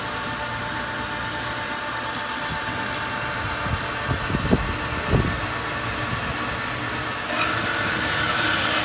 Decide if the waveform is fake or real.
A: real